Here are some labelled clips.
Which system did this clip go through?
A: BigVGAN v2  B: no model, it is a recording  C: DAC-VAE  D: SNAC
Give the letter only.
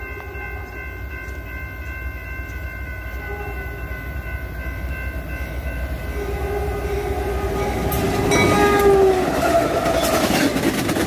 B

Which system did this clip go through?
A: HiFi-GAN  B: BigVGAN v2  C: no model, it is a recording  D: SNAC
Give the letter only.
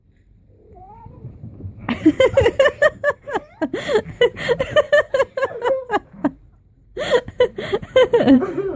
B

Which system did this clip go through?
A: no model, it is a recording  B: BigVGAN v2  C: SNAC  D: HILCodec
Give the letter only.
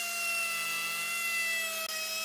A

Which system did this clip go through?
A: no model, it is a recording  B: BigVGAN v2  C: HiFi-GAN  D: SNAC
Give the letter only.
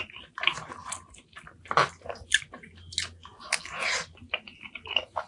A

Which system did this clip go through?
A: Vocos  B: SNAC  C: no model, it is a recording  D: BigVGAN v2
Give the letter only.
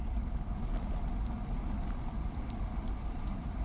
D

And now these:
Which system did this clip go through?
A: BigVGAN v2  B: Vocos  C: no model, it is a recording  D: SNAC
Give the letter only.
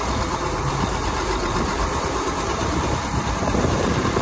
A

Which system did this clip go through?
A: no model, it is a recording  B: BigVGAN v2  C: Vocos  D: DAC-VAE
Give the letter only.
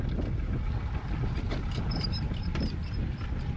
A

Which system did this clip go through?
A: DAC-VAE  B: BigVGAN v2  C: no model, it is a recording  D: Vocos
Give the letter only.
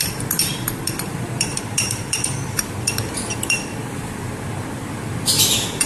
B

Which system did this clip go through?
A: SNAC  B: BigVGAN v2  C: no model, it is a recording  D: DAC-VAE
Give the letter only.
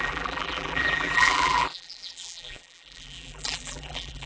B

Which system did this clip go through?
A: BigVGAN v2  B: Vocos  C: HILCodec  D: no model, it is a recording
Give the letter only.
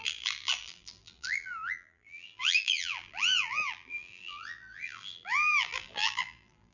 A